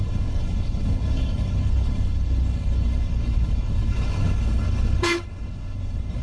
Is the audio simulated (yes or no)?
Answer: yes